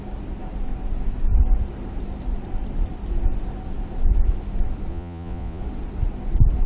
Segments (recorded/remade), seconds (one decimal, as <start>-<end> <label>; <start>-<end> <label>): 0.0-4.9 recorded; 4.9-5.6 remade; 5.6-6.7 recorded